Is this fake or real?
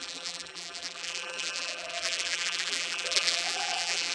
fake